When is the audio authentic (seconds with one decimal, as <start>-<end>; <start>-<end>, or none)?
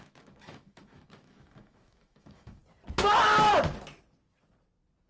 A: 2.6-5.1